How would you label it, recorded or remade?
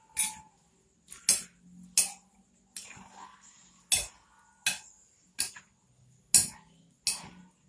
recorded